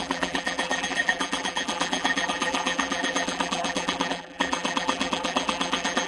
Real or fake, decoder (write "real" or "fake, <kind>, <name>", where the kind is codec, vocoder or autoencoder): fake, vocoder, BigVGAN v2